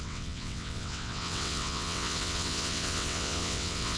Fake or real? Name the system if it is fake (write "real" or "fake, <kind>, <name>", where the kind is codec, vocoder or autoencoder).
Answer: fake, vocoder, WaveNeXt